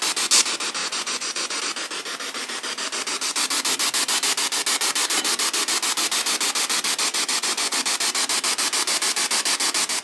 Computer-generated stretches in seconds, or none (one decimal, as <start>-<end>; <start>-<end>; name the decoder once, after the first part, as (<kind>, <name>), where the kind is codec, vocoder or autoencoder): 0.8-1.6 (vocoder, Vocos); 7.1-7.8

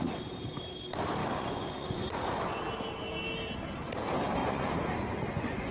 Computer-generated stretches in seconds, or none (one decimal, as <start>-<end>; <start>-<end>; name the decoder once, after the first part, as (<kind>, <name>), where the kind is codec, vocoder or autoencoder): 1.2-2.6 (vocoder, Vocos); 4.4-5.7

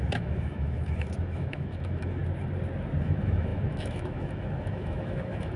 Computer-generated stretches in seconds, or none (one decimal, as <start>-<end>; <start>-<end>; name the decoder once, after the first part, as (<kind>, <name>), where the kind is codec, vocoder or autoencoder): 0.0-2.2 (autoencoder, DAC-VAE); 3.0-5.6

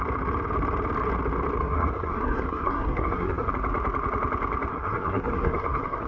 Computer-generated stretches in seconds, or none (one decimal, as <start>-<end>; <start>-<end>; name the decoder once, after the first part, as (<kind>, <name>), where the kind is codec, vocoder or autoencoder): 1.6-3.5 (codec, SNAC); 4.7-6.1

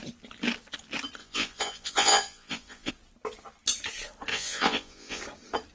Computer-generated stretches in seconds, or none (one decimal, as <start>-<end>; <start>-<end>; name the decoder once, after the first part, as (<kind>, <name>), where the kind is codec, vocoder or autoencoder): 1.2-2.9 (vocoder, Vocos); 4.3-5.2

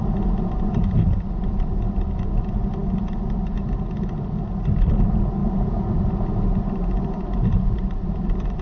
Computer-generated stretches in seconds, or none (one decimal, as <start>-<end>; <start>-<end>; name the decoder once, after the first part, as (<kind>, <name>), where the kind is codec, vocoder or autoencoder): none